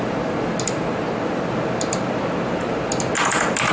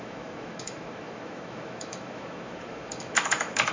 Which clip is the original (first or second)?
first